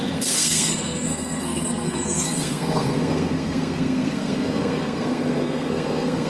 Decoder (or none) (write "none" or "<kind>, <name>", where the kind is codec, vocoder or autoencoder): codec, SNAC